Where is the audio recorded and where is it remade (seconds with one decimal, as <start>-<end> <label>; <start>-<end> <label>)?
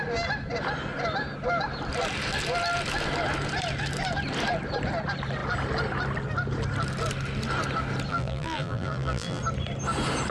0.0-8.1 recorded; 8.1-9.4 remade; 9.4-10.3 recorded